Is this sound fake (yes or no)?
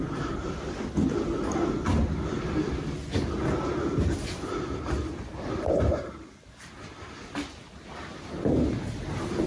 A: no